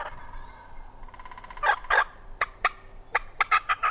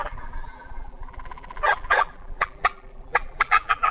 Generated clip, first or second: second